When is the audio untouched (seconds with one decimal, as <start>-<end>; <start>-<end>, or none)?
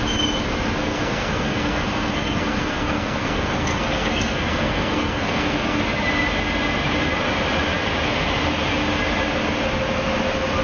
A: 0.0-0.8; 5.8-10.6